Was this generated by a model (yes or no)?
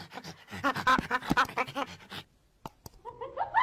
no